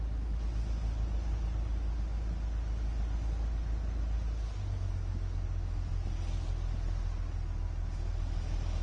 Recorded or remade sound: recorded